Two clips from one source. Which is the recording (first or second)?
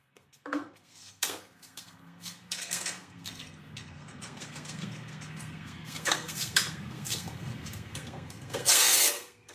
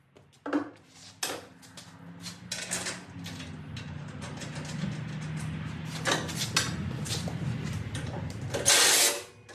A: second